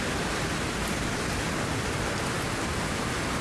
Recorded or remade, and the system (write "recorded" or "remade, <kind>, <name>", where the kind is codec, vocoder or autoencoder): recorded